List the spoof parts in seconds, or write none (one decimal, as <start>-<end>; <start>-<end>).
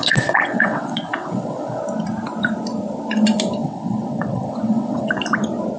0.0-1.8; 3.6-5.1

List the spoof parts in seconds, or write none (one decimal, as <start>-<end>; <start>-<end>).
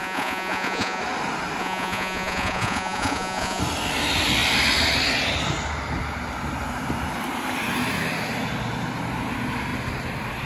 0.0-1.0; 1.6-3.6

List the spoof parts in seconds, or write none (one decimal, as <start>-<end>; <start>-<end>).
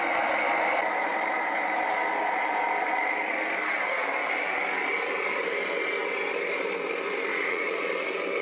7.3-7.9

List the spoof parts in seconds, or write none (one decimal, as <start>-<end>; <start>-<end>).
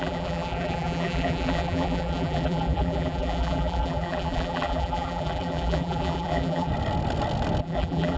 0.0-6.7; 7.6-8.2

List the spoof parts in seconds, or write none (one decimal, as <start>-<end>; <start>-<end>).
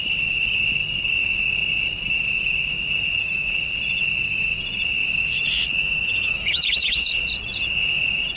5.7-7.1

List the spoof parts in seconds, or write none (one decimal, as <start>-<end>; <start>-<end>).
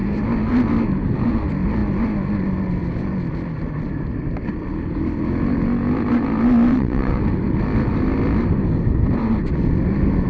6.7-7.2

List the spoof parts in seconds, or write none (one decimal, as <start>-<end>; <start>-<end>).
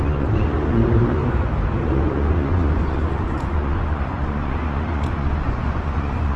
0.0-1.2; 1.8-6.4